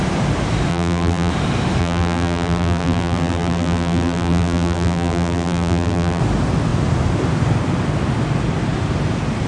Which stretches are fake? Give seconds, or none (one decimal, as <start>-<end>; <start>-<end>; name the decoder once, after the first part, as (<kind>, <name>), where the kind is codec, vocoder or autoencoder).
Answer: 0.7-1.3 (vocoder, BigVGAN v2); 1.8-6.2